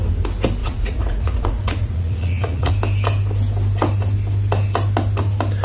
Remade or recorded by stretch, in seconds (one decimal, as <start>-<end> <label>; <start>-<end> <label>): 0.0-0.6 recorded; 0.6-2.7 remade; 2.7-5.6 recorded